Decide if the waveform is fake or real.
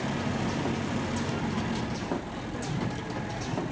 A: real